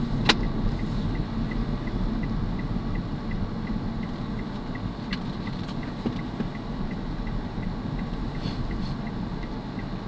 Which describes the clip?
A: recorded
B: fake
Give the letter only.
A